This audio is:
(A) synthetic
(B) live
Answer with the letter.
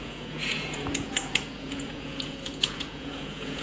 A